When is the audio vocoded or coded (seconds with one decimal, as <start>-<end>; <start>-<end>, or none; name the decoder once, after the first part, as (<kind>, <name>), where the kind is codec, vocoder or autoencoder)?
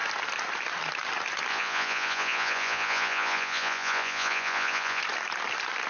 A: 1.5-5.0 (vocoder, Vocos)